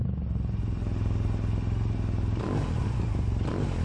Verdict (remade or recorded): recorded